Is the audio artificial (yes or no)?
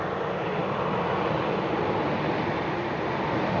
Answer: no